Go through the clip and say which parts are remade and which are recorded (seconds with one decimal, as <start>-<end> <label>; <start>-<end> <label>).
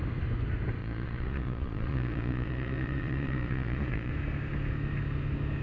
0.0-0.8 recorded; 0.8-4.1 remade; 4.1-5.6 recorded